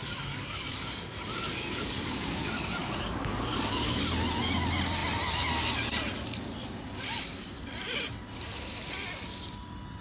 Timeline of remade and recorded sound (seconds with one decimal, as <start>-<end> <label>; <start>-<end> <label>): 0.0-4.0 remade; 4.0-10.0 recorded